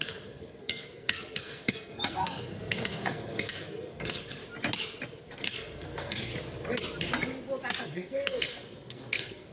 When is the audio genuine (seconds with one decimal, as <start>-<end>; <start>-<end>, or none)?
4.4-5.2; 6.3-7.8